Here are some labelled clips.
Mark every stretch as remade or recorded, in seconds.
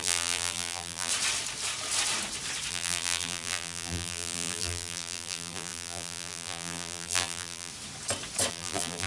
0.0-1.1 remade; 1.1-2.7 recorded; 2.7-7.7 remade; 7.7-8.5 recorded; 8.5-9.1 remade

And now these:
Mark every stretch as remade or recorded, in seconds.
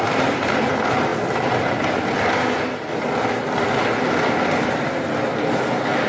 0.0-6.1 recorded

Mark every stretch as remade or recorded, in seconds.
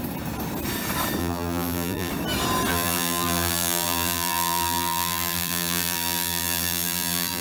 0.0-1.2 recorded; 1.2-2.1 remade; 2.1-2.7 recorded; 2.7-7.4 remade